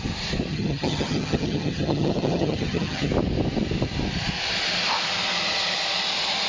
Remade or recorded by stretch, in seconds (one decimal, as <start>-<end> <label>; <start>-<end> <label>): 0.0-0.5 recorded; 0.5-3.1 remade; 3.1-6.5 recorded